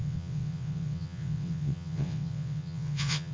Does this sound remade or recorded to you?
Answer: remade